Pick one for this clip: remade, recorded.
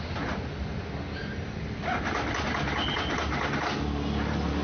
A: recorded